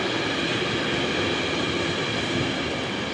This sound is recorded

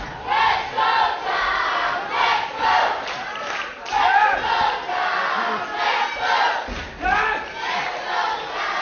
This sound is recorded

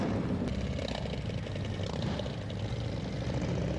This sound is recorded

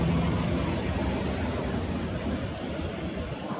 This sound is recorded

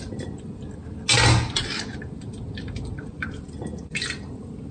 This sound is recorded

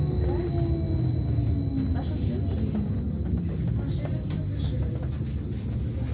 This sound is recorded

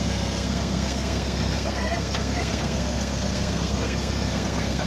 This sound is remade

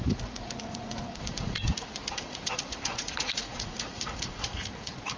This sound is remade